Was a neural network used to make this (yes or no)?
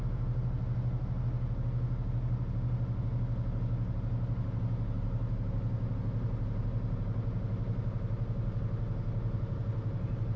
no